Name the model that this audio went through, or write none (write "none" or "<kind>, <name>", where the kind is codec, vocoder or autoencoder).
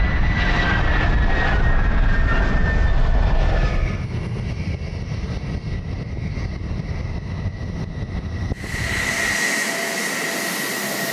none